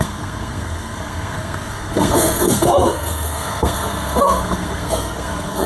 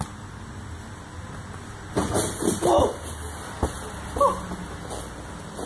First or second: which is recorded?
second